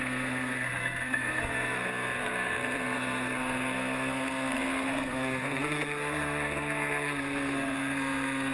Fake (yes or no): yes